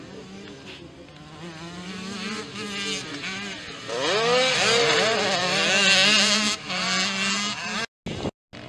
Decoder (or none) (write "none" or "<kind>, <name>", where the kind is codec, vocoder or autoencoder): none